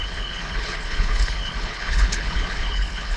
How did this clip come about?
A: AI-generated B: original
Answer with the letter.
A